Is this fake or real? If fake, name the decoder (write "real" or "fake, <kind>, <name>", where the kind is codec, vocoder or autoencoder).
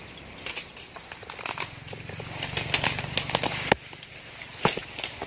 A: real